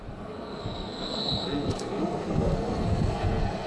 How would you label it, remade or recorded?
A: remade